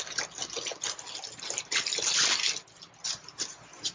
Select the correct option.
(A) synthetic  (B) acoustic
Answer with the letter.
B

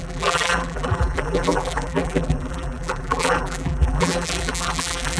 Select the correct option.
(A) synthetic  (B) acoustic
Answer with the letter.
A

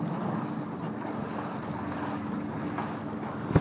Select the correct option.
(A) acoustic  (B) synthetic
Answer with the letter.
A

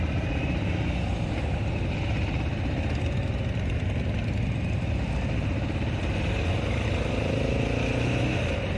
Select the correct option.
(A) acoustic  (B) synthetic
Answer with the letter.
A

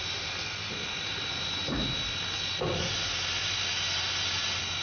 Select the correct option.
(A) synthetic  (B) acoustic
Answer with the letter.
B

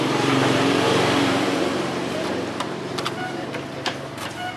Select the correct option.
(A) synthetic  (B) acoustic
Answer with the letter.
A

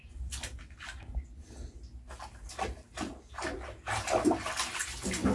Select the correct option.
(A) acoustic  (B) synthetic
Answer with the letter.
A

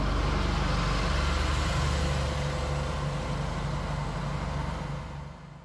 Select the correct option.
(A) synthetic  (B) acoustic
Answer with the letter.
B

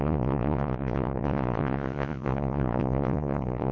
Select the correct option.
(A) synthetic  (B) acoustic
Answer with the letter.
A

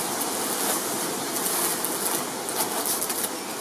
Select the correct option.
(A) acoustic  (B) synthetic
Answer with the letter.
A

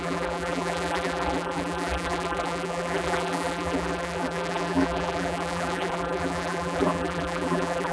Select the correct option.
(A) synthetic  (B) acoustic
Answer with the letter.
A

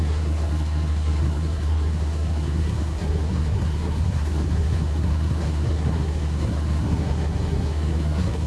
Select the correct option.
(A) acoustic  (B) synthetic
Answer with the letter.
B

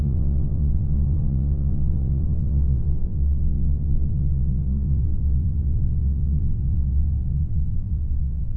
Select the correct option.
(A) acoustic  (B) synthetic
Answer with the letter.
B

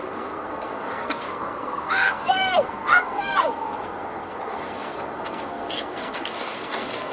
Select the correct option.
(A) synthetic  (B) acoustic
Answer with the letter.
A